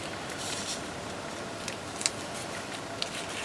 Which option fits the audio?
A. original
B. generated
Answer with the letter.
A